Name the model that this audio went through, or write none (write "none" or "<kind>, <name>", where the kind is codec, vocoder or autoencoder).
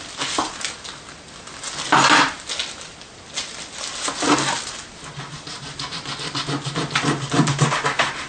none